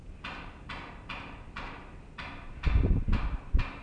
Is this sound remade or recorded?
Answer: recorded